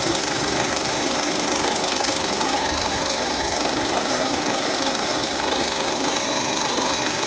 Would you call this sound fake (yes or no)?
yes